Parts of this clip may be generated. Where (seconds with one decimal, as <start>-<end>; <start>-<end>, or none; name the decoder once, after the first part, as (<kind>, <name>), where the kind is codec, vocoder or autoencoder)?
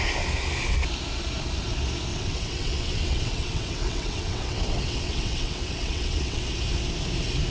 2.1-6.6 (vocoder, WaveNeXt)